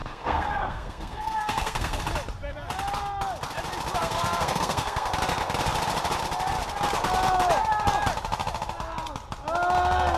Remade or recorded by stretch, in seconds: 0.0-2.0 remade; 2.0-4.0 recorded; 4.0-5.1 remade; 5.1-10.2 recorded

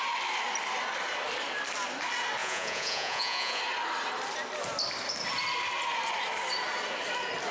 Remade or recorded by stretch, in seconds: 0.0-2.4 recorded; 2.4-3.6 remade; 3.6-7.5 recorded

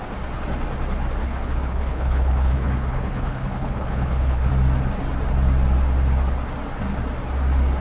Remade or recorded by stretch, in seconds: 0.0-1.2 recorded; 1.2-4.5 remade; 4.5-7.8 recorded